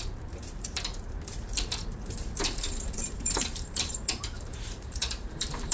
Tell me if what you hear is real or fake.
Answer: fake